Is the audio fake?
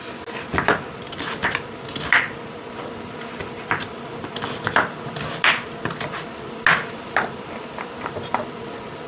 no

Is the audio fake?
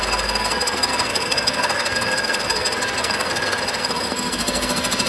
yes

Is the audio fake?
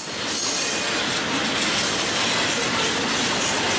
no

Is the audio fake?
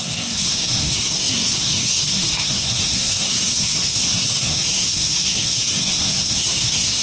yes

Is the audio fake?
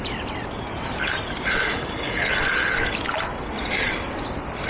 no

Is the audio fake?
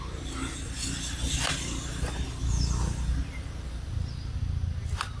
no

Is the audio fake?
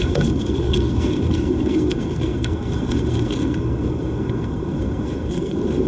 yes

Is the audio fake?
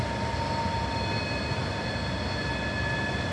no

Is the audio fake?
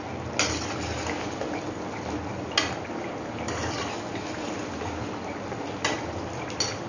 no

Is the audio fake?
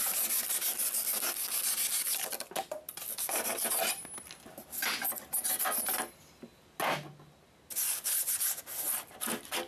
no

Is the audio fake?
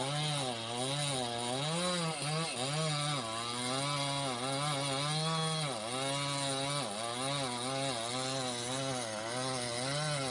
no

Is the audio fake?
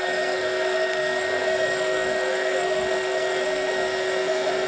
yes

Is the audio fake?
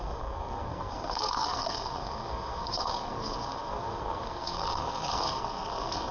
yes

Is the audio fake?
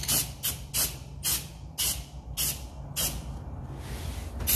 no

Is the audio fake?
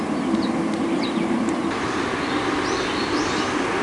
no